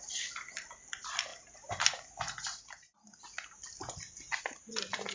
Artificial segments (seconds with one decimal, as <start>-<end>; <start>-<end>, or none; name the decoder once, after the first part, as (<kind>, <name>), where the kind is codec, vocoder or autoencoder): 0.0-1.3 (vocoder, BigVGAN v2); 4.4-5.1